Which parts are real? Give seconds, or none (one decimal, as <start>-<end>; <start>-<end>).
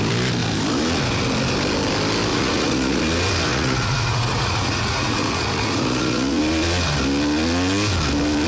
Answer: 0.0-2.3; 3.0-3.5; 6.4-8.5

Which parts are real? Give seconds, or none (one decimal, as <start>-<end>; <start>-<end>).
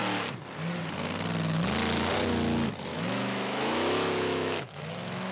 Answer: 0.0-2.9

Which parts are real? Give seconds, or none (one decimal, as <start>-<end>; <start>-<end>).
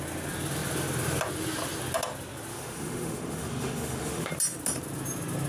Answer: 0.0-2.5; 4.3-5.5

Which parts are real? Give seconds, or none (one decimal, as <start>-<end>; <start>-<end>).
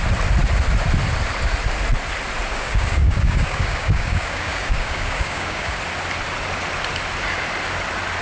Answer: 0.0-2.5; 5.8-8.2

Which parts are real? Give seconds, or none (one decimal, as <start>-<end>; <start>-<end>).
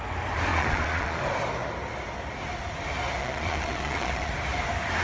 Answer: 0.0-0.5; 1.2-3.2; 4.3-5.0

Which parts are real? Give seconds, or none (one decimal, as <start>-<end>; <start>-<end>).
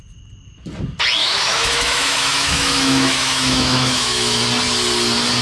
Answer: 0.0-1.2; 4.4-5.4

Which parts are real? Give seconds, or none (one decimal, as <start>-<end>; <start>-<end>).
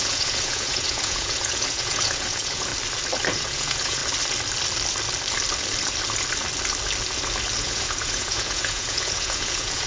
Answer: 2.7-3.3; 4.0-7.6